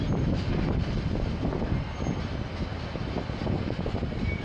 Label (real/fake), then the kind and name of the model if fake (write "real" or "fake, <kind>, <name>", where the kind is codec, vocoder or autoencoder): real